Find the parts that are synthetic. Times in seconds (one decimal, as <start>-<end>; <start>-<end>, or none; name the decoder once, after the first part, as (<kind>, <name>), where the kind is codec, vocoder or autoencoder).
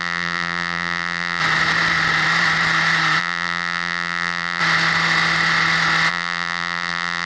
0.0-1.4 (vocoder, BigVGAN v2); 3.2-4.6; 6.1-7.2